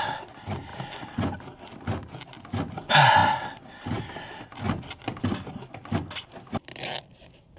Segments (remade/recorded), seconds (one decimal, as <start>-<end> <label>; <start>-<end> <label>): 0.0-7.6 recorded